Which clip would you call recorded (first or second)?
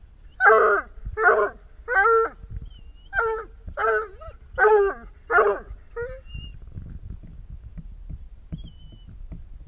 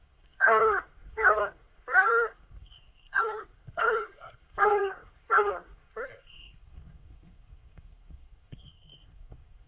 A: first